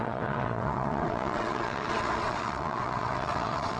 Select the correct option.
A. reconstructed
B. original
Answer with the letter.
A